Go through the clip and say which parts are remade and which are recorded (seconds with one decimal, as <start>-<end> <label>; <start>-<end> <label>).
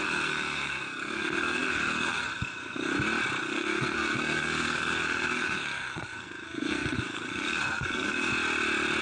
0.0-2.9 remade; 2.9-3.4 recorded; 3.4-8.3 remade; 8.3-9.0 recorded